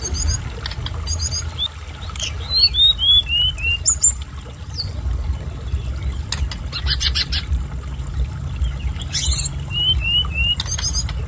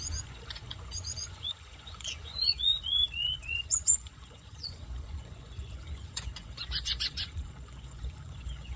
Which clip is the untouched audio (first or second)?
first